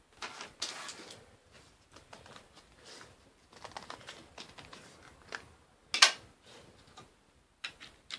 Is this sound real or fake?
real